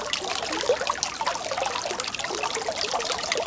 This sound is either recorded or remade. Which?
recorded